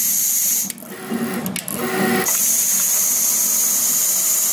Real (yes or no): yes